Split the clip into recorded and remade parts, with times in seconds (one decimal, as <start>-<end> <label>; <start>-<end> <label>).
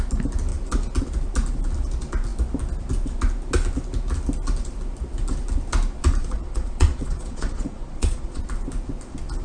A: 0.0-6.2 recorded; 6.2-8.4 remade; 8.4-9.4 recorded